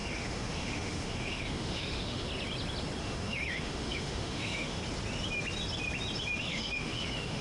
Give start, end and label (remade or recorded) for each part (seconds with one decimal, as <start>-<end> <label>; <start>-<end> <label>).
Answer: 0.0-2.3 remade; 2.3-3.0 recorded; 3.0-4.8 remade; 4.8-6.4 recorded; 6.4-7.4 remade